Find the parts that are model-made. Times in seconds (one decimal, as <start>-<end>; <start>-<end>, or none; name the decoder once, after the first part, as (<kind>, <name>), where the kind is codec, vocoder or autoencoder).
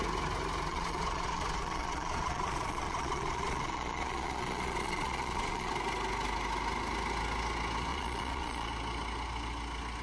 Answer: 0.7-5.7 (vocoder, Vocos); 7.9-8.7